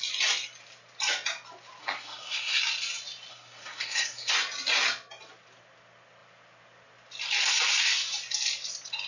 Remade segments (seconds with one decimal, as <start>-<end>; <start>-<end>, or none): 1.8-2.6; 3.3-4.3